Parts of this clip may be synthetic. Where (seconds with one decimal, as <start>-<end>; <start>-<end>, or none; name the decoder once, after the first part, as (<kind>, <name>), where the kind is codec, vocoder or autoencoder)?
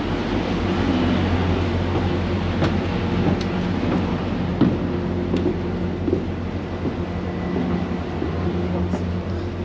none